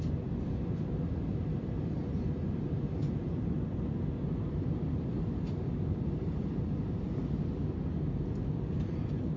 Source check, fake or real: real